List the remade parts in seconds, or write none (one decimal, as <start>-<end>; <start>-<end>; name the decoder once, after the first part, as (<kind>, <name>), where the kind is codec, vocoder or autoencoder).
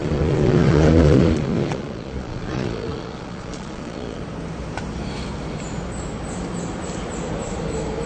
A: 0.0-4.2 (vocoder, Vocos)